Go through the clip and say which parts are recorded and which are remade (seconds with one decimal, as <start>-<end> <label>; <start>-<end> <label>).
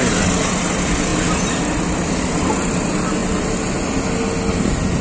0.0-5.0 recorded